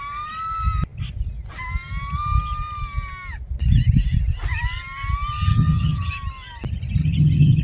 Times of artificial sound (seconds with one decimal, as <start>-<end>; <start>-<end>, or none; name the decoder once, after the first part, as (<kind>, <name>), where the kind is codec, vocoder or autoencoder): 5.5-6.1 (vocoder, HiFi-GAN); 7.0-7.6